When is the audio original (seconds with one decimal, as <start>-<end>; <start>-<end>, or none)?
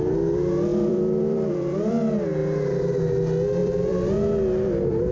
0.0-0.7; 1.9-3.6; 4.1-5.1